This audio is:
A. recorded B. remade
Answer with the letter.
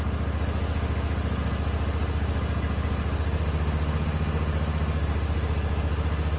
A